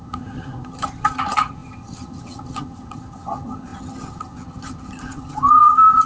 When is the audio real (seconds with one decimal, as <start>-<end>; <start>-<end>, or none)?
none